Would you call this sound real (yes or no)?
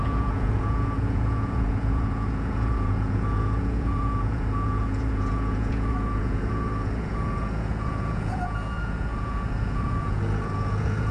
no